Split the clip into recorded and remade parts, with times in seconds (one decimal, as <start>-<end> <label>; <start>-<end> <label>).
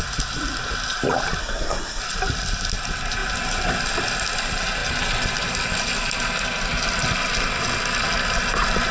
0.0-1.4 recorded; 1.4-2.0 remade; 2.0-8.9 recorded